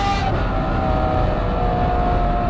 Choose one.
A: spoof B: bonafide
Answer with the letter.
B